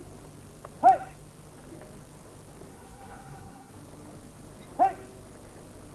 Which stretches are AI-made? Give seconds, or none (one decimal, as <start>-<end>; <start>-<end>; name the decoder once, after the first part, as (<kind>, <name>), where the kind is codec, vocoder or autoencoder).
2.7-3.7 (codec, SNAC)

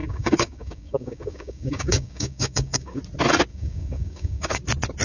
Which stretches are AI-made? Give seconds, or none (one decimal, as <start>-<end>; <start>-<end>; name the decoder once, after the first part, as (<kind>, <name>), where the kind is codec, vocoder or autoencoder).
0.0-3.0 (codec, DAC); 3.5-4.6

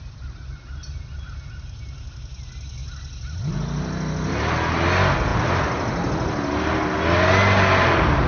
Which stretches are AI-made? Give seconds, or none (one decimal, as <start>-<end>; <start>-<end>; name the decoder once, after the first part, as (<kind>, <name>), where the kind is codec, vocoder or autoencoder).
none

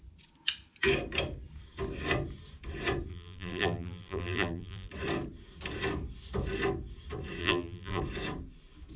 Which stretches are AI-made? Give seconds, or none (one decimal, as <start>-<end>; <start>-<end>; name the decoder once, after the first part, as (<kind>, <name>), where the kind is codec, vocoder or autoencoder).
3.1-4.9 (vocoder, BigVGAN v2); 7.4-8.0

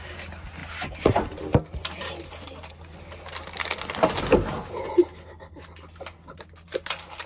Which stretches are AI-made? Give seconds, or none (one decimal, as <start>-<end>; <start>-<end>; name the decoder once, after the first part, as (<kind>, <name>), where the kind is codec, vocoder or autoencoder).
none

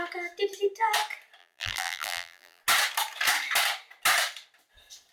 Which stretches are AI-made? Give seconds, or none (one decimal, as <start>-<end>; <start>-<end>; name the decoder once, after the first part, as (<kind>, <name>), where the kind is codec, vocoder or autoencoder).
1.4-2.6 (vocoder, BigVGAN v2)